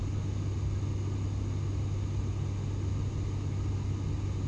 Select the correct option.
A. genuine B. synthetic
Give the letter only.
A